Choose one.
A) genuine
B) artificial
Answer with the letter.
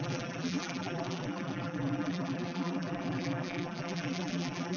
B